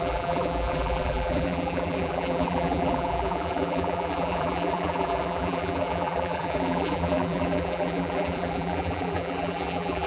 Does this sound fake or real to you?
fake